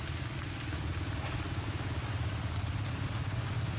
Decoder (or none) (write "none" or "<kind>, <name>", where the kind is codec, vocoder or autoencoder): none